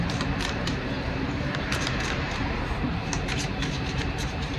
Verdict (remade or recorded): remade